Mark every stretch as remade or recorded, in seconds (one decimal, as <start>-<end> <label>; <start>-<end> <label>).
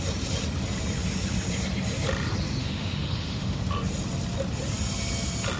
0.0-2.6 recorded; 2.6-3.6 remade; 3.6-5.6 recorded